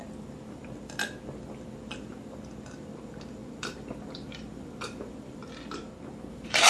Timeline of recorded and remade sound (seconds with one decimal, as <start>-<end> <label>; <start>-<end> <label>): 0.0-5.4 remade; 5.4-6.3 recorded; 6.3-6.7 remade